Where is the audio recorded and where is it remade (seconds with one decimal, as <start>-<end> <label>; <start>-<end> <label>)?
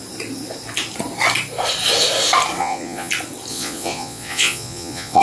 0.0-2.6 recorded; 2.6-3.1 remade; 3.1-3.5 recorded; 3.5-5.2 remade